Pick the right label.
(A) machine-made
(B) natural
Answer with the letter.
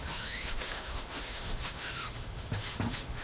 A